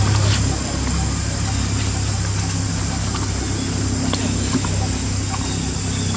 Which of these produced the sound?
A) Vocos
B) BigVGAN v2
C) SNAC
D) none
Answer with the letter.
D